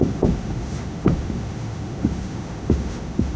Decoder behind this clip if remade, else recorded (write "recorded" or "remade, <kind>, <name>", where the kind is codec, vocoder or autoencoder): remade, autoencoder, DAC-VAE